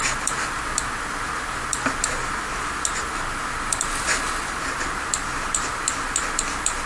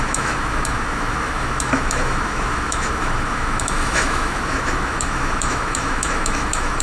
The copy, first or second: second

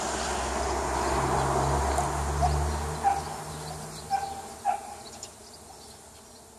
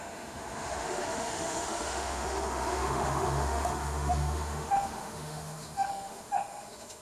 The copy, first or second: second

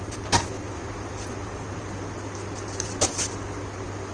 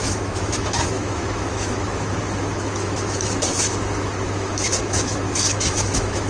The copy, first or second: second